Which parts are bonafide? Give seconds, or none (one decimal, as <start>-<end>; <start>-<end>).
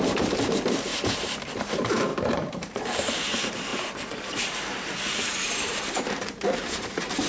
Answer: 0.9-1.6; 3.7-4.3